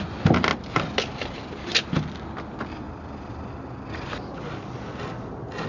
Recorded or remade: recorded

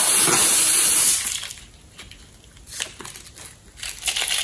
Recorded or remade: recorded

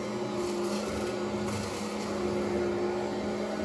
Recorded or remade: recorded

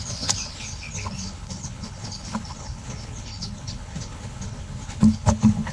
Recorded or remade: remade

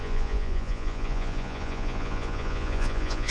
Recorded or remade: remade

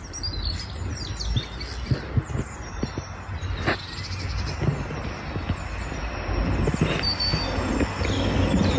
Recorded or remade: recorded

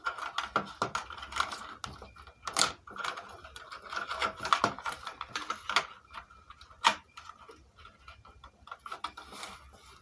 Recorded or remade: recorded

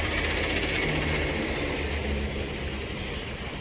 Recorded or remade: recorded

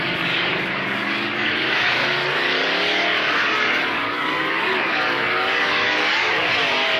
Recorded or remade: remade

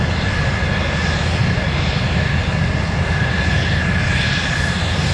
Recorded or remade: recorded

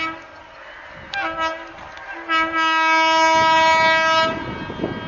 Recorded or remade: recorded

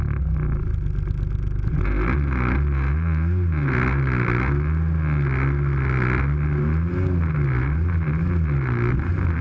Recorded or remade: recorded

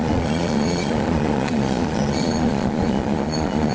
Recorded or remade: remade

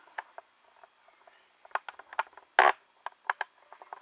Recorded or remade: recorded